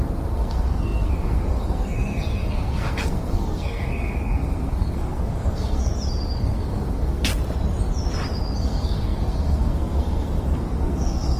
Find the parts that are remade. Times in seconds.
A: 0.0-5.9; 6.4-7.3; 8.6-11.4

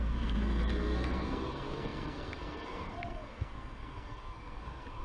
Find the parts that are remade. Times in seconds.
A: 0.0-5.0

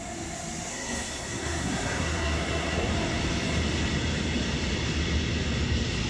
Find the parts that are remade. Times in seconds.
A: 0.7-2.9

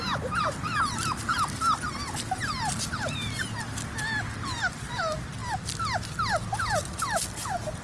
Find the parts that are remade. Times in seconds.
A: none